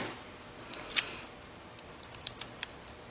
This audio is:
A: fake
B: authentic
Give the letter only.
B